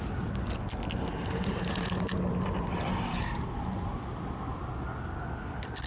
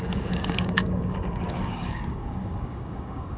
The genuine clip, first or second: first